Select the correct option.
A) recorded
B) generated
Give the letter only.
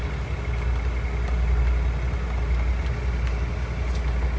A